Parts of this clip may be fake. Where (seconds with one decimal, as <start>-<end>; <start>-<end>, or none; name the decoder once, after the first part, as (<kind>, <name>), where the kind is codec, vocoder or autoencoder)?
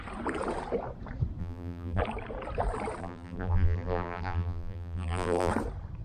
1.4-2.0 (vocoder, BigVGAN v2); 3.0-5.5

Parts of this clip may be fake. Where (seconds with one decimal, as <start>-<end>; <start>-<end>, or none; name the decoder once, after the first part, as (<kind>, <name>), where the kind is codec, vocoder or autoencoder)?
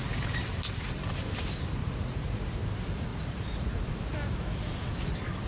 1.8-2.4 (vocoder, Vocos); 3.1-4.0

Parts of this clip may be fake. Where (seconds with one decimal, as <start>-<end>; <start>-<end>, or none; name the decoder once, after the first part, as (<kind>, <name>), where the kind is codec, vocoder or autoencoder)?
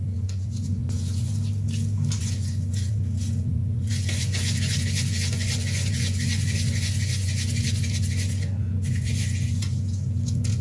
0.0-1.3 (vocoder, Vocos); 2.2-10.6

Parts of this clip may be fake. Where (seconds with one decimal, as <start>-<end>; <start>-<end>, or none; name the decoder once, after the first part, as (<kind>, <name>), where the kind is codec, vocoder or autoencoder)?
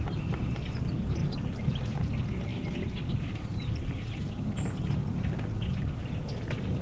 none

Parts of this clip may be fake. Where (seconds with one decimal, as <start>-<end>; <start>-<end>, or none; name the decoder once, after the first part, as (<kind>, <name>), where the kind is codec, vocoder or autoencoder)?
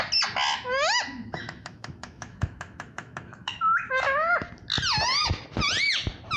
0.5-4.3 (autoencoder, DAC-VAE)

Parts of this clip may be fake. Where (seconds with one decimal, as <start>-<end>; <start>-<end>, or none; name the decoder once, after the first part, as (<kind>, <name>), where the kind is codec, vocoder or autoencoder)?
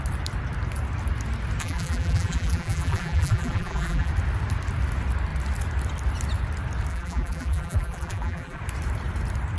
1.6-4.1 (vocoder, BigVGAN v2); 6.9-8.6